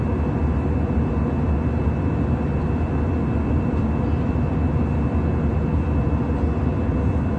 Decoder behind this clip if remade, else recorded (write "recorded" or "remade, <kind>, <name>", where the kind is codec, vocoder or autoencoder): recorded